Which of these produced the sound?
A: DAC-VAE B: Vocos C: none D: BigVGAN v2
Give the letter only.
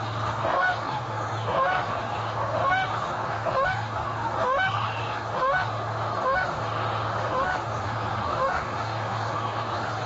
A